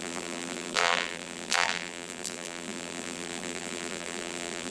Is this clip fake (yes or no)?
yes